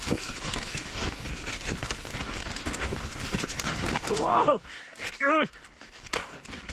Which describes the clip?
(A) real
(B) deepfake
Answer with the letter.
B